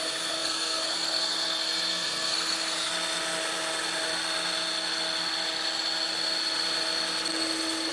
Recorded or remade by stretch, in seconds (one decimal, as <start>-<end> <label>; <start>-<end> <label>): 0.0-2.9 remade; 2.9-7.9 recorded